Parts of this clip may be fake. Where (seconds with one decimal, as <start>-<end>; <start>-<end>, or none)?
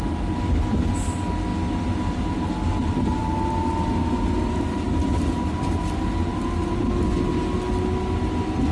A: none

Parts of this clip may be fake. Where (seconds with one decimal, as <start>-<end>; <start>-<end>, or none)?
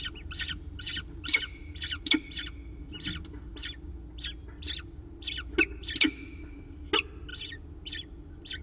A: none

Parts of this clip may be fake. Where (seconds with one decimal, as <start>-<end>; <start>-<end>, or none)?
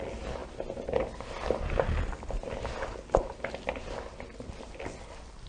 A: none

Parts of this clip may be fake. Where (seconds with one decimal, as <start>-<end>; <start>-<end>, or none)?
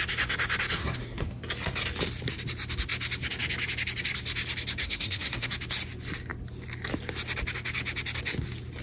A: 0.8-1.4; 4.8-5.5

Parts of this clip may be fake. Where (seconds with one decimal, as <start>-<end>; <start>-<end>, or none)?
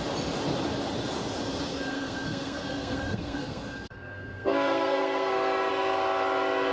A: 1.7-5.7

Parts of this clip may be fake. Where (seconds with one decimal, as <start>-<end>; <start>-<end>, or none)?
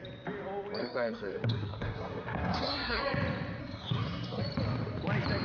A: 0.8-3.0; 3.6-4.4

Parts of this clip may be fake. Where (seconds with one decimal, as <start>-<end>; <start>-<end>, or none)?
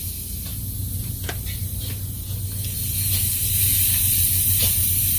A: none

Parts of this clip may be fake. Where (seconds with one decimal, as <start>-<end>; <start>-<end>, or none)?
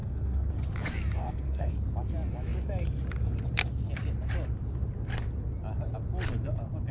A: 0.0-0.5; 1.2-1.7